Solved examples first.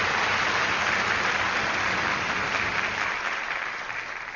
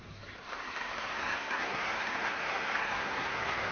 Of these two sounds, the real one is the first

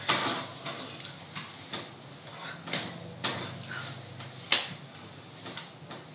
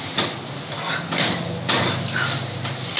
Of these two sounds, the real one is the first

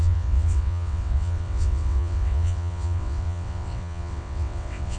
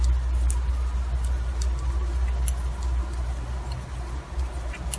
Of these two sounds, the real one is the second